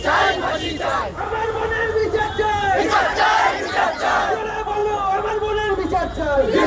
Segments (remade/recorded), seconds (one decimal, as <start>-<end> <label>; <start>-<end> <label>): 0.0-6.7 recorded